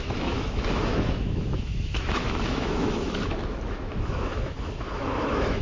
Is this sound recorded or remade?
remade